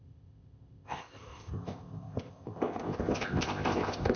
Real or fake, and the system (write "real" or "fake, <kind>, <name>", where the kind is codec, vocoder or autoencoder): fake, codec, ZipCodec